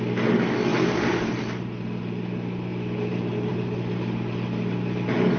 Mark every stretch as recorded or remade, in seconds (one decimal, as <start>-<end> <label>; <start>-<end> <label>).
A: 0.0-5.4 recorded